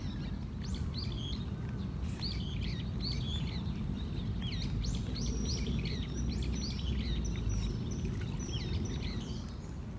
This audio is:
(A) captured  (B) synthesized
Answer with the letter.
A